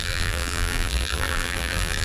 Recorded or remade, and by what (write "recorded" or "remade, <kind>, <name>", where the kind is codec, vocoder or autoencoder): remade, vocoder, BigVGAN v2